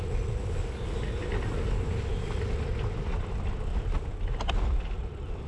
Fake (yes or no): no